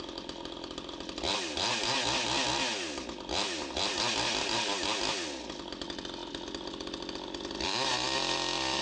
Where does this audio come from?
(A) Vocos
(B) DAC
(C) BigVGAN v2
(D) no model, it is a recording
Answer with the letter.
D